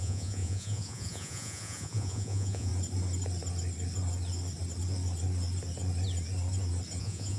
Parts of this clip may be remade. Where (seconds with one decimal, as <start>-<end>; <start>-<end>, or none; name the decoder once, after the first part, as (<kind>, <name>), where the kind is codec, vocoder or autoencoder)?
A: 0.0-2.7 (vocoder, Vocos); 7.0-7.4